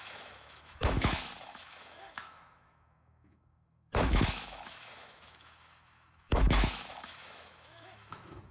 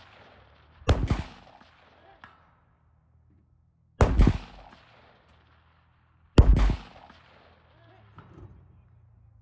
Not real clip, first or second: first